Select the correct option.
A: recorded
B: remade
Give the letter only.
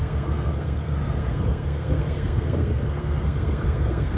B